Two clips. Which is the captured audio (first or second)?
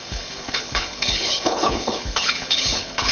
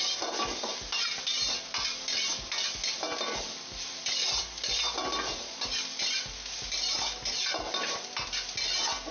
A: second